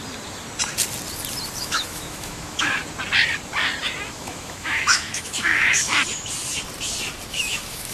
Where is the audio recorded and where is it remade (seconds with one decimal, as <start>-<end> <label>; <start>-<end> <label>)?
0.0-1.6 recorded; 1.6-2.8 remade; 2.8-4.2 recorded; 4.2-5.9 remade; 5.9-7.3 recorded; 7.3-7.9 remade